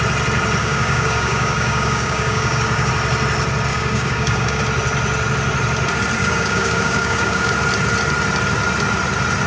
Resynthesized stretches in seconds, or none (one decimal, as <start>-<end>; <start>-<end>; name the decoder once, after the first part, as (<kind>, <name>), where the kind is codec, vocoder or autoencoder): 0.6-2.9 (codec, DAC); 3.7-4.6; 6.2-7.5